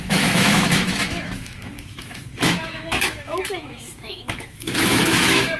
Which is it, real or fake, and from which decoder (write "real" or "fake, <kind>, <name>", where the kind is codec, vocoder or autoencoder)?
fake, autoencoder, DAC-VAE